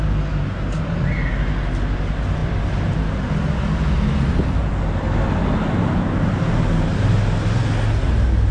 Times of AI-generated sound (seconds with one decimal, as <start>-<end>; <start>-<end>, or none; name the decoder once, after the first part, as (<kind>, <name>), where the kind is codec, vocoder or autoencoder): 2.4-3.3 (vocoder, BigVGAN v2)